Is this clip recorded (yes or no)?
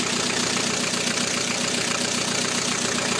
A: yes